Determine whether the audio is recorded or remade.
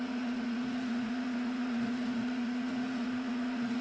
remade